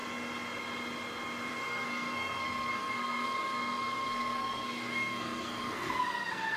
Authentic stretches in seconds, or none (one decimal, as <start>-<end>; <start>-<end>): 0.0-1.5